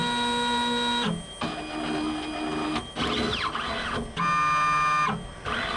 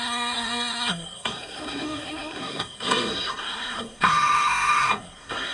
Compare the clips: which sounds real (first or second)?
first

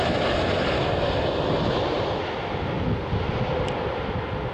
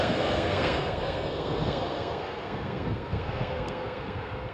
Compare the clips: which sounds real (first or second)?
first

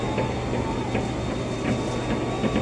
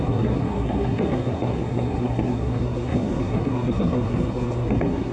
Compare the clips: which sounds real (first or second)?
first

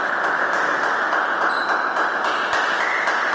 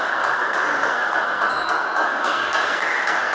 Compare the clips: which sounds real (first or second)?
first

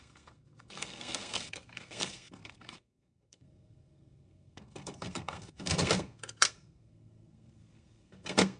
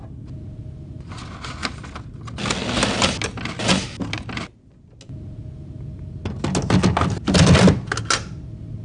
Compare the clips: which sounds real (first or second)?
second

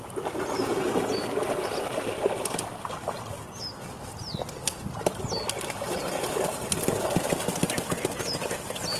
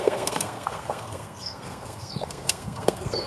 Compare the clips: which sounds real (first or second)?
first